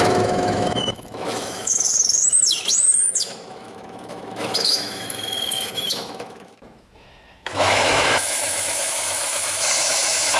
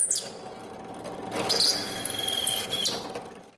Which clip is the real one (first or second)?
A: second